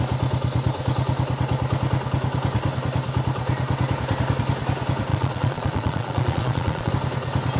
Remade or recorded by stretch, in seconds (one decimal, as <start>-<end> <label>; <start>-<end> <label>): 0.0-5.1 recorded; 5.1-6.9 remade; 6.9-7.6 recorded